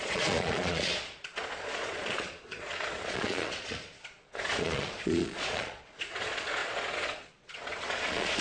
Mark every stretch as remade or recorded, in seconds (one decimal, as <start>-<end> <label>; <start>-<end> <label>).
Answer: 0.0-8.4 remade